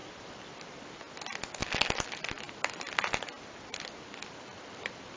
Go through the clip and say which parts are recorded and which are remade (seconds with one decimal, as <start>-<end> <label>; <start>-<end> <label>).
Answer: 0.0-5.2 recorded

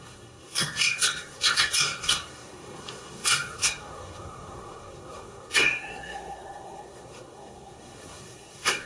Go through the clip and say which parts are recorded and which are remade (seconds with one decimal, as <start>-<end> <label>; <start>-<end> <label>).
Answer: 0.0-8.9 remade